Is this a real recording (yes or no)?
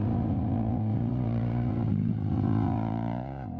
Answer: no